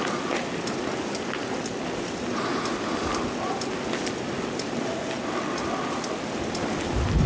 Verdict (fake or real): real